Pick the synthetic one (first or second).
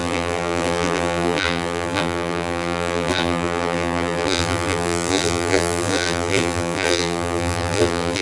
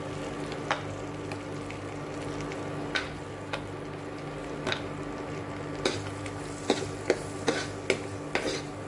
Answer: first